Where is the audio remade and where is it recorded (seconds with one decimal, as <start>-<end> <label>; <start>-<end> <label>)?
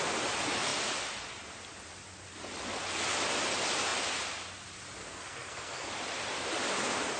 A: 0.0-5.0 recorded; 5.0-5.9 remade; 5.9-7.2 recorded